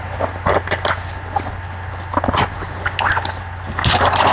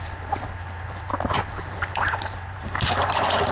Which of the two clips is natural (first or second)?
first